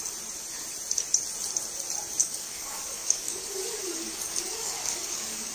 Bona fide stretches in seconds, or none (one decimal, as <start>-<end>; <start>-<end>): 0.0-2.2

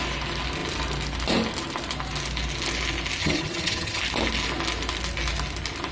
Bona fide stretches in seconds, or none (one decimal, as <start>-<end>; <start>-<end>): 0.0-3.2; 4.0-5.9

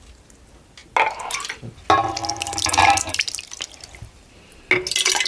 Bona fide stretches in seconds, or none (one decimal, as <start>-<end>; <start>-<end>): 0.0-5.3

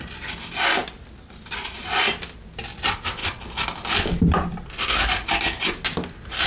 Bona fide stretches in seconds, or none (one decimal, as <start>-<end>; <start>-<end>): 0.0-6.5

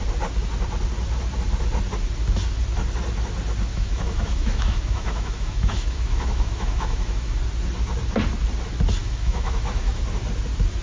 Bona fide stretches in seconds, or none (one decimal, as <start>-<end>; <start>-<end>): 0.0-3.7; 7.4-9.0; 10.0-10.8